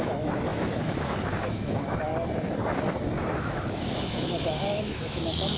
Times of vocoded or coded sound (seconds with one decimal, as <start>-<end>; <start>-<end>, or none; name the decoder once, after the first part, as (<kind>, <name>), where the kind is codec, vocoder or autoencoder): 0.0-2.1 (autoencoder, DAC-VAE); 3.2-5.6

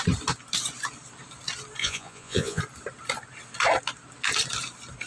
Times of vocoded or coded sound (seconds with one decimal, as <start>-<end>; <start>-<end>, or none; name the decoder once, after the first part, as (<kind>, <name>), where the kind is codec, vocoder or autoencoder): 1.8-2.6 (vocoder, Vocos)

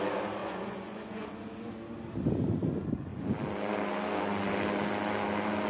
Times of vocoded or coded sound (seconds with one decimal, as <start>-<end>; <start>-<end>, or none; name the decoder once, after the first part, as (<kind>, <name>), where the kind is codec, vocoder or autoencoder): 0.4-1.3 (vocoder, Vocos)

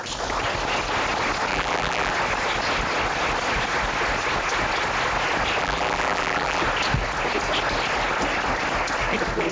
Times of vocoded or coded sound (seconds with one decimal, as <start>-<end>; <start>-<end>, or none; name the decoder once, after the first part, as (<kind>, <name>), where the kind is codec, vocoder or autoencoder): 1.5-2.1 (vocoder, BigVGAN v2); 5.6-6.6

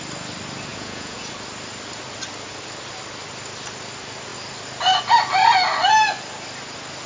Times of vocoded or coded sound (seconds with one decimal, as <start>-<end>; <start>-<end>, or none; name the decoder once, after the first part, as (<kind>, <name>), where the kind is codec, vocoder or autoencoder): 0.7-1.3 (vocoder, Vocos)

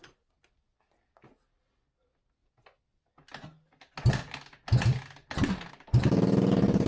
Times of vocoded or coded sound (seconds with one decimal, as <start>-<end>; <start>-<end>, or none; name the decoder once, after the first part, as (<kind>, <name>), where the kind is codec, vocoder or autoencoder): none